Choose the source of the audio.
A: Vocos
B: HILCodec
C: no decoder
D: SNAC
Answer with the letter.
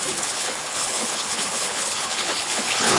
B